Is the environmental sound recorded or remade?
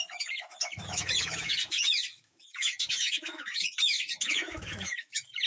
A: remade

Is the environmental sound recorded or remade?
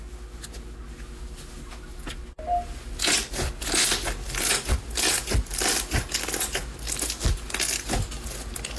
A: recorded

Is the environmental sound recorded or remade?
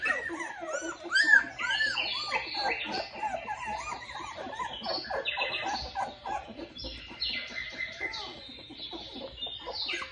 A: recorded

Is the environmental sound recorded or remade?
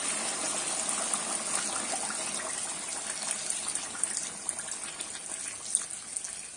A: recorded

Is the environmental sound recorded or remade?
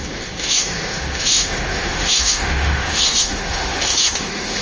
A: remade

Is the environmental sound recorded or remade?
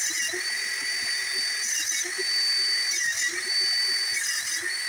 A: recorded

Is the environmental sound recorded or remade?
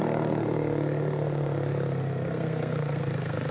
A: remade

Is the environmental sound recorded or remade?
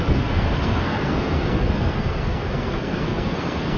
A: remade